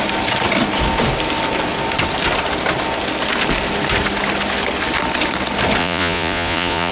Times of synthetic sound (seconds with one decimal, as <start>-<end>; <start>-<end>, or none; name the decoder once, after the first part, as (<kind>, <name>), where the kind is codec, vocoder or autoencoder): 5.8-6.9 (vocoder, Vocos)